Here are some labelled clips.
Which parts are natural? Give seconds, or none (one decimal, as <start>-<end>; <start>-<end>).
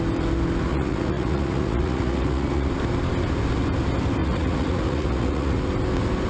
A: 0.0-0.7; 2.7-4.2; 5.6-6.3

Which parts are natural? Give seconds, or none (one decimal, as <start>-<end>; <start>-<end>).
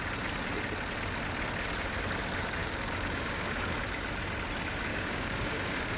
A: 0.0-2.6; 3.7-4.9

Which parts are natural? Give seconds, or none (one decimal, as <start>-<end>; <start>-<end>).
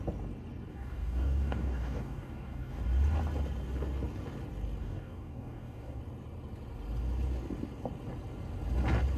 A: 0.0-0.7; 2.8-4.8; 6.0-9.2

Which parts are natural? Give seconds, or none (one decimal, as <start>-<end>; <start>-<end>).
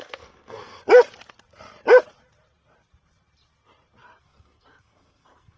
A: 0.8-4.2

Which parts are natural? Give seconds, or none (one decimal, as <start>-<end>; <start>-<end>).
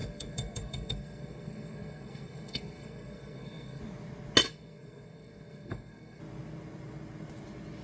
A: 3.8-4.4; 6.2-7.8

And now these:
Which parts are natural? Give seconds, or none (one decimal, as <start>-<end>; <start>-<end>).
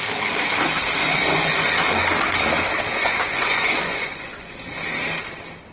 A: 0.0-1.0; 1.7-3.0; 4.7-5.7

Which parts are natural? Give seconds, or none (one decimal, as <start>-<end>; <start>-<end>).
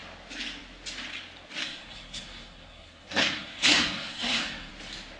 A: 0.0-1.6; 4.7-5.2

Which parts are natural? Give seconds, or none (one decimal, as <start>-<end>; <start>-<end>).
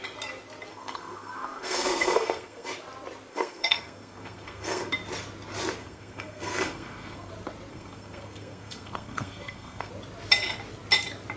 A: 0.0-0.7; 2.7-3.3; 4.9-5.8; 7.3-7.7; 9.9-11.4